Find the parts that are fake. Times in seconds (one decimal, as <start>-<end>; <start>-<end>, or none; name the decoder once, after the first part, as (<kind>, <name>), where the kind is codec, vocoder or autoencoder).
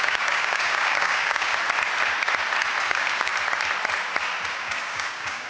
0.0-1.5 (codec, DAC); 2.8-3.3; 4.6-5.5